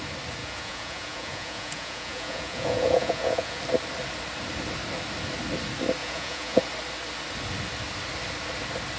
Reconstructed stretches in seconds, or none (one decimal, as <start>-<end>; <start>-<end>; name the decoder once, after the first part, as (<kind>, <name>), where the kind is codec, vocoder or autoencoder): 0.4-3.6 (vocoder, Vocos); 6.0-6.6